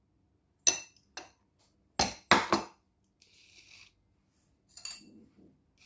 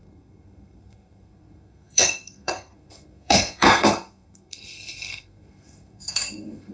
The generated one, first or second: second